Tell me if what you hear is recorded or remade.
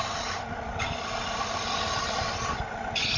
recorded